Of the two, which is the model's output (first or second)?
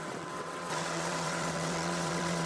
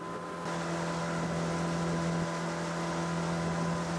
first